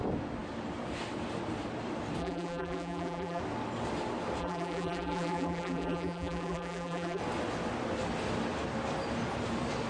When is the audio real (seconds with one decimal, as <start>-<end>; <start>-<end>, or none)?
0.0-2.2; 3.4-4.4; 7.2-9.9